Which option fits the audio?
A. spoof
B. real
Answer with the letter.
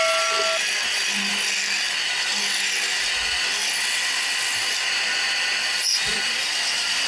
B